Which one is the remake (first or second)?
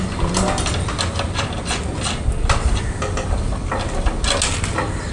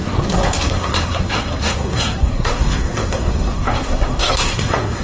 second